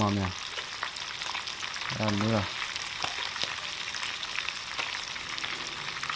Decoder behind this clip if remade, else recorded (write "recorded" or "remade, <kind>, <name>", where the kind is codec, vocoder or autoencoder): recorded